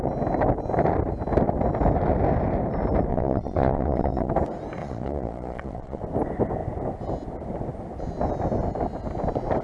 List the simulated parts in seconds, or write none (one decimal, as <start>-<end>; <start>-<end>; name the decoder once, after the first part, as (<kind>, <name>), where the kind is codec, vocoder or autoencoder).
3.1-4.3 (vocoder, Vocos); 4.8-6.0